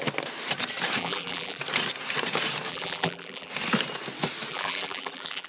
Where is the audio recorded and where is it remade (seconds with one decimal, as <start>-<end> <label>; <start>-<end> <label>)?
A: 0.0-1.0 recorded; 1.0-1.6 remade; 1.6-2.7 recorded; 2.7-3.5 remade; 3.5-4.5 recorded; 4.5-5.5 remade